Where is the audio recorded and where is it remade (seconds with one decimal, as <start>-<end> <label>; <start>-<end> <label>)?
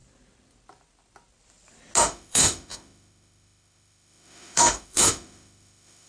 0.0-2.0 recorded; 2.0-6.1 remade